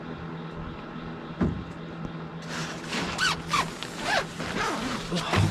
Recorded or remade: recorded